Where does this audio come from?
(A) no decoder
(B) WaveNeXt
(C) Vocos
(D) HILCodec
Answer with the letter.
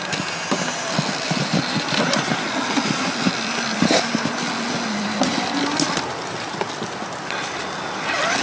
A